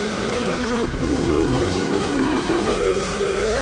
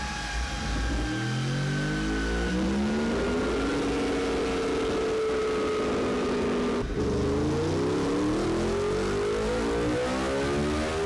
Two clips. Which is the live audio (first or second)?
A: second